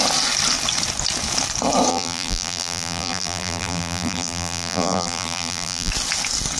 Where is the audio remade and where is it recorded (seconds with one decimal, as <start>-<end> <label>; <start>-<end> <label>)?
0.0-1.9 recorded; 1.9-5.9 remade; 5.9-6.6 recorded